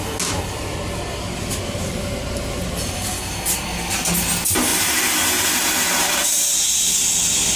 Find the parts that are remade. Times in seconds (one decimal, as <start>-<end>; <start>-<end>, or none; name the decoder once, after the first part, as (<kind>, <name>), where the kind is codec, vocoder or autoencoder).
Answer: none